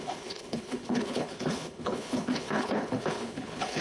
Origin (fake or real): fake